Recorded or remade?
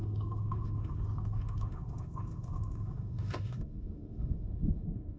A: remade